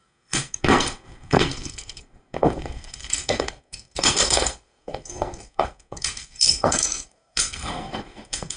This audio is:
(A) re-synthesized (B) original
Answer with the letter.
A